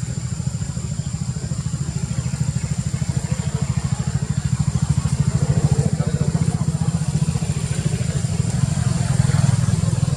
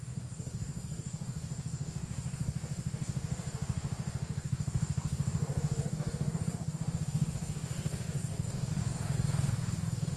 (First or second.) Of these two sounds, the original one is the first